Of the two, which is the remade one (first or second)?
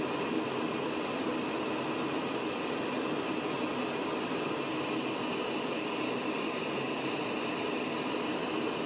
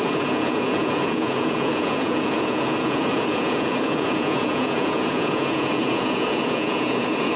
second